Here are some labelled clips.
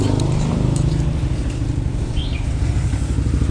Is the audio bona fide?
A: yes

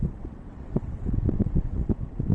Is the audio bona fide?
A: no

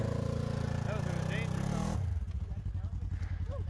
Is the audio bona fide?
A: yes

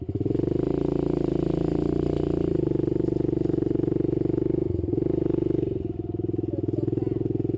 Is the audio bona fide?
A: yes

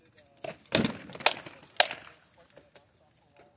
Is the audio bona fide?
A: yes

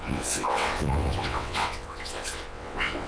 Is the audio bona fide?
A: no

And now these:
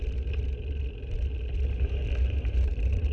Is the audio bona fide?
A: yes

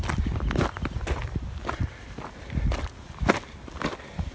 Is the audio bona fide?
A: yes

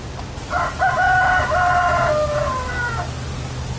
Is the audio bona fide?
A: yes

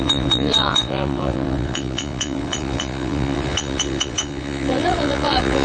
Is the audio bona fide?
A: no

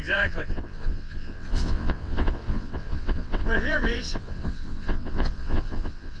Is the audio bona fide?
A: no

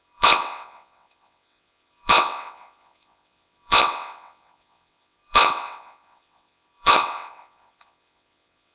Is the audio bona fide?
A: no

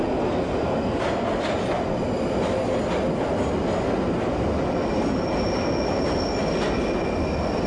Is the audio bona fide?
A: yes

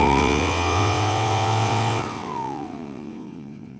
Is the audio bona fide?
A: no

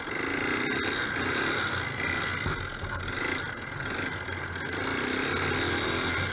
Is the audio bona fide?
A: yes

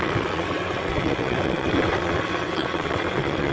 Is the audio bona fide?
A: no